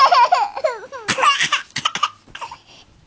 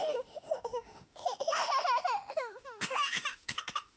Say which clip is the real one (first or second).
first